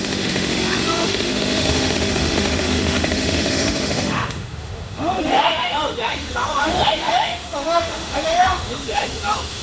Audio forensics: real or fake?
fake